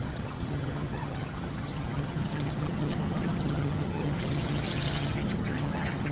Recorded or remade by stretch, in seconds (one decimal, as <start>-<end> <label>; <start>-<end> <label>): 0.0-6.1 remade